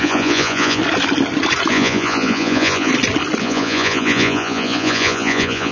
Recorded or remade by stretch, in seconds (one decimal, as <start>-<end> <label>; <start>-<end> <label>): 0.0-0.8 remade; 0.8-1.7 recorded; 1.7-2.9 remade; 2.9-3.4 recorded; 3.4-5.7 remade